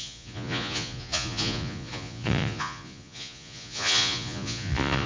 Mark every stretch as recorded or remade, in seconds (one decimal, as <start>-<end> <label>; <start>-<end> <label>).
0.0-5.1 remade